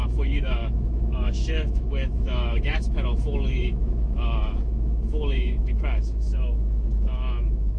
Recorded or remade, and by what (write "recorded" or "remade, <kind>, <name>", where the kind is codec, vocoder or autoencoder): remade, autoencoder, DAC-VAE